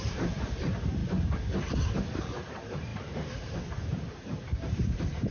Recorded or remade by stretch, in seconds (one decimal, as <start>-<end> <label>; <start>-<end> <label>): 0.0-1.0 remade; 1.0-2.5 recorded; 2.5-5.3 remade